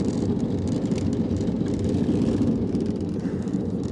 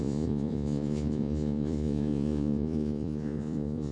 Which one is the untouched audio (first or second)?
first